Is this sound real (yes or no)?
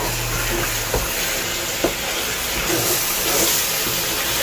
yes